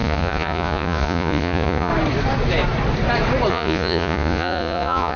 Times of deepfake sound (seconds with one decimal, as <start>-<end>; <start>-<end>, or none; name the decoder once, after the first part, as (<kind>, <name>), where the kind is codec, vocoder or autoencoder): 0.0-1.9 (vocoder, Vocos); 3.5-5.2